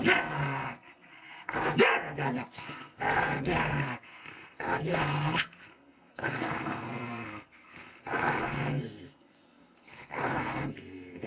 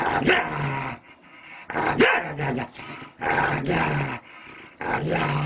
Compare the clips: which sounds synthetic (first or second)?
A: first